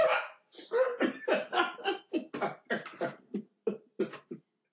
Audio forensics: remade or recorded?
recorded